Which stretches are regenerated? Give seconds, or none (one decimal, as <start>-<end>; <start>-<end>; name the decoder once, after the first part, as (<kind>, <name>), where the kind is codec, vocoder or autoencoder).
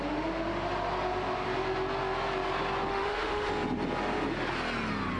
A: 2.9-3.5 (autoencoder, DAC-VAE)